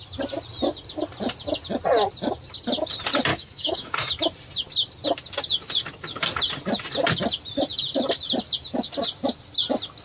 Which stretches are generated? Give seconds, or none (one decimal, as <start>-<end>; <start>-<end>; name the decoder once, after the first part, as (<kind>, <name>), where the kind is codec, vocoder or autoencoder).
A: 3.3-4.1 (autoencoder, DAC-VAE)